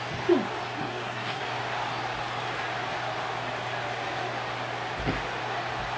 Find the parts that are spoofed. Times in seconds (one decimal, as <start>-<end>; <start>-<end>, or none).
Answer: 0.8-1.4